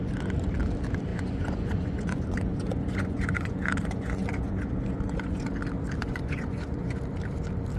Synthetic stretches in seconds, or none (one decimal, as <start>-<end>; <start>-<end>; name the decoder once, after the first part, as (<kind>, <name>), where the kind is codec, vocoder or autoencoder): 1.1-5.5 (vocoder, Vocos); 6.0-7.0